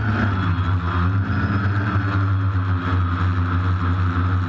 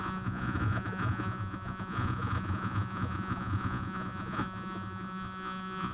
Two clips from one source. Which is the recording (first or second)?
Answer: first